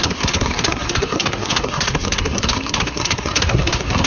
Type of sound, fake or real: fake